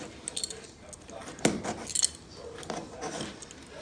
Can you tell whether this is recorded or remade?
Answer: recorded